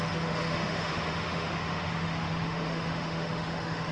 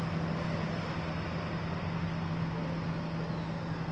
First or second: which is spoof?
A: first